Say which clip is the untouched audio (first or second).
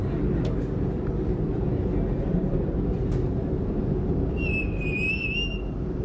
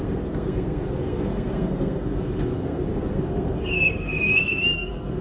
first